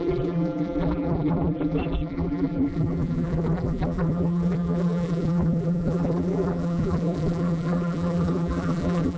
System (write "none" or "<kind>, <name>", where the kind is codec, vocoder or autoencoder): vocoder, BigVGAN v2